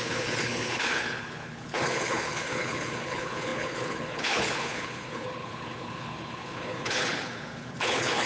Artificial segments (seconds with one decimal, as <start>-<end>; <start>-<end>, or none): 0.0-8.3

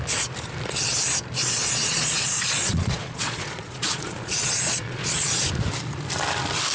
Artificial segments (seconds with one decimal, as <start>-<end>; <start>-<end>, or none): 1.4-5.4

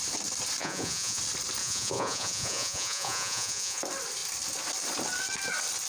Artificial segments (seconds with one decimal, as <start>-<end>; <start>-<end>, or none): 0.6-1.2; 1.6-3.8

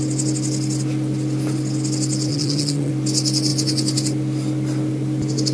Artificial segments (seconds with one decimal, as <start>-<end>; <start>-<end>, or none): 2.3-2.9

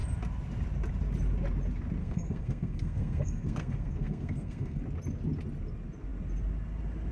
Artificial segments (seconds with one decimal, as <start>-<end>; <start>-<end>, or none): 2.0-4.8

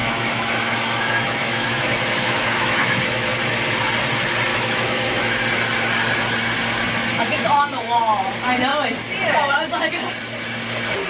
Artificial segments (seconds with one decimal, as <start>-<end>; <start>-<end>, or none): 0.0-3.3; 4.5-5.3; 7.1-8.0

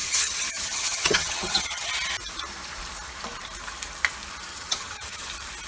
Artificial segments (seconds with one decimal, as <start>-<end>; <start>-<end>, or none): 0.0-1.9; 4.5-5.3